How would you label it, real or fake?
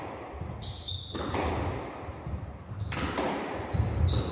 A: real